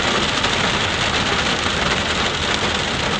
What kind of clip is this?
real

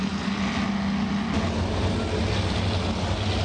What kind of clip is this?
real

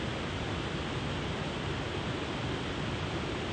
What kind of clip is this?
real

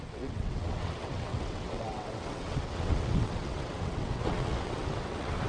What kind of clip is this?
fake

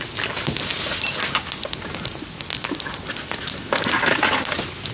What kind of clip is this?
real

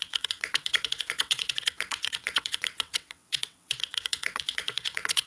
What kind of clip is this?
fake